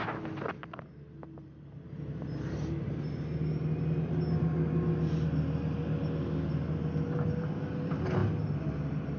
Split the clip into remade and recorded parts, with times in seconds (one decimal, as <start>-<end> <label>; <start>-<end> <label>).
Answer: 0.0-9.2 recorded